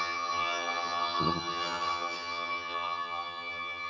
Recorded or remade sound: remade